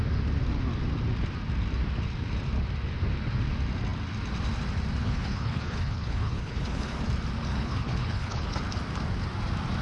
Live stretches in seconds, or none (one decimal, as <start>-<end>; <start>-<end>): 0.0-5.0; 7.0-7.5; 8.6-9.8